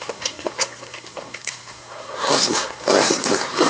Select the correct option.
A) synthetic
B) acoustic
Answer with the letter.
A